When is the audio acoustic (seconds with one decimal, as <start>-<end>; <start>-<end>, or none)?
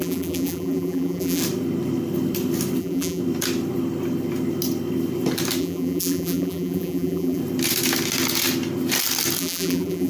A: 1.4-2.8; 3.2-5.6; 7.4-9.4